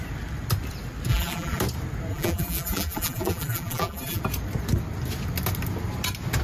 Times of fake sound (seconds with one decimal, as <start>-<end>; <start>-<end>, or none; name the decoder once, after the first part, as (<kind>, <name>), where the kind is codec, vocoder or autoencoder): 1.1-1.6 (vocoder, BigVGAN v2); 2.1-4.2